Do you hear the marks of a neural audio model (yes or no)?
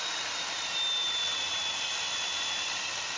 yes